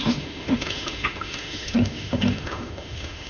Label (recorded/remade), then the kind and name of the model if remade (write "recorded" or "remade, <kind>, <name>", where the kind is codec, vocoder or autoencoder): remade, autoencoder, DAC-VAE